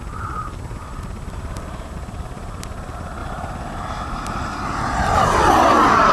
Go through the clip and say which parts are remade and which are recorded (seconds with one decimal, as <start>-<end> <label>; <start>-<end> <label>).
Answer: 0.0-6.1 recorded